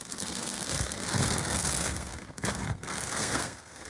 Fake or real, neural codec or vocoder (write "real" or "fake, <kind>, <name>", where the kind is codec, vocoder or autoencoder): fake, codec, SNAC